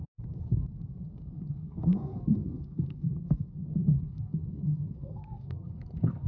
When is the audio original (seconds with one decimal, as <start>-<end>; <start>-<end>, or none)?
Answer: none